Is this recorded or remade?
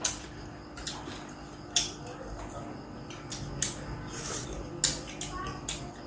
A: recorded